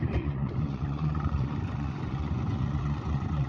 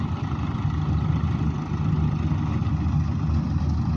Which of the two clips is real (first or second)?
second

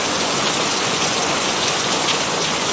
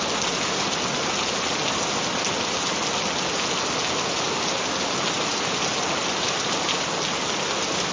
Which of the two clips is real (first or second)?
second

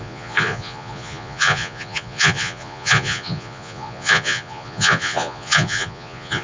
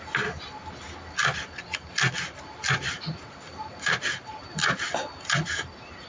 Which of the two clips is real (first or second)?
second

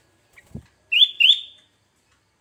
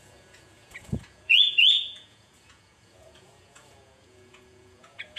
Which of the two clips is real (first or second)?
first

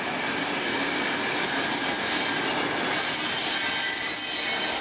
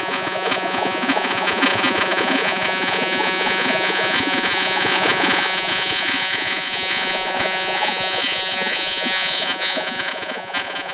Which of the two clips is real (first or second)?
first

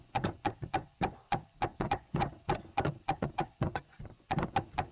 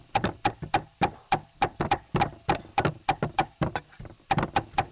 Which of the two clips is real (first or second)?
second